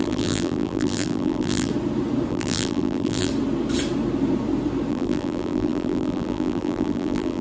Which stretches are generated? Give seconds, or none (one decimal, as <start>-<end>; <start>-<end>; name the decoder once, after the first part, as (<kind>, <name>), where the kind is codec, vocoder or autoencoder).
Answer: 0.0-1.7 (vocoder, BigVGAN v2); 2.3-3.3; 4.9-7.4

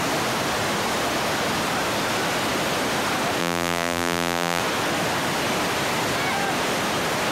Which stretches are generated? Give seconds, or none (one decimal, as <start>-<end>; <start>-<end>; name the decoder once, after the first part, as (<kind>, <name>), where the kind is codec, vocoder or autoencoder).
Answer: 3.4-4.6 (vocoder, BigVGAN v2)

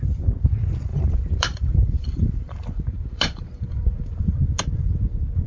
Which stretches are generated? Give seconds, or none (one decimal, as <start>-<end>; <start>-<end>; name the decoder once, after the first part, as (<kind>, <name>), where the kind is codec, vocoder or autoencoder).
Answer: 0.9-4.2 (vocoder, BigVGAN v2)

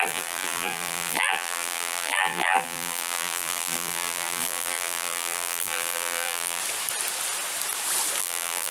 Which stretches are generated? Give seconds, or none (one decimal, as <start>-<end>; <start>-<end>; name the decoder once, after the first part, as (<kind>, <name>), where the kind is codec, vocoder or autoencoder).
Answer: 0.0-6.6 (vocoder, BigVGAN v2); 8.2-8.7

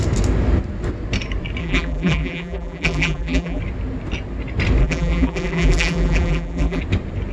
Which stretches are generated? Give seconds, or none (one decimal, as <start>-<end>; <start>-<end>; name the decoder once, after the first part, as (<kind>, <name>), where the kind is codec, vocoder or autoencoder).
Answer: 1.6-3.6 (vocoder, BigVGAN v2); 4.8-6.8